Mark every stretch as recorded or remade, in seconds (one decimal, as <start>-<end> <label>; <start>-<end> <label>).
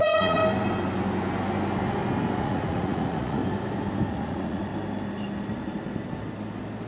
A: 0.0-0.4 remade; 0.4-2.4 recorded; 2.4-3.4 remade; 3.4-4.1 recorded; 4.1-4.7 remade; 4.7-6.9 recorded